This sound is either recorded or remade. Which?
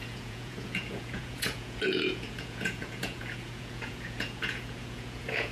remade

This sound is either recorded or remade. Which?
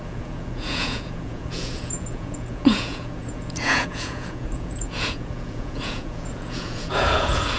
remade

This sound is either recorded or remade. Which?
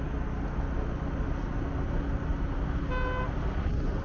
recorded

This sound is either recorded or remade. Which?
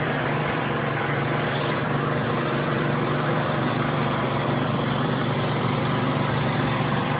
remade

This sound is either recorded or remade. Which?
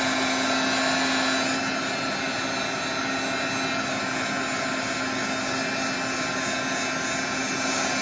recorded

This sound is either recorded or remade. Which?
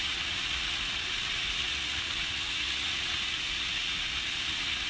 remade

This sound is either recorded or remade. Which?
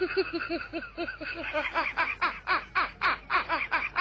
recorded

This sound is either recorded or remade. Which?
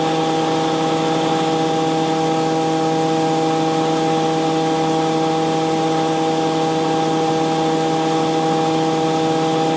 recorded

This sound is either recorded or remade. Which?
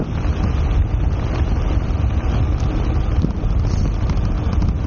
recorded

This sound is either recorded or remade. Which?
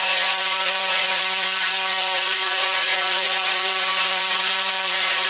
remade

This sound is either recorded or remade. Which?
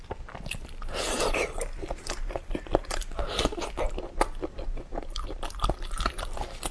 recorded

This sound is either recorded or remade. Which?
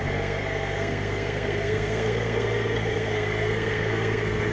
remade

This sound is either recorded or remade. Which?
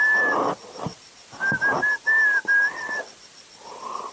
recorded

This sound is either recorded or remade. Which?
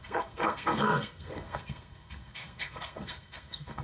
remade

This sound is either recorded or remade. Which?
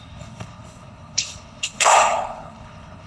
remade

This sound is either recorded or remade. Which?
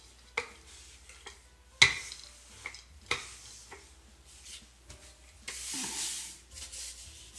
recorded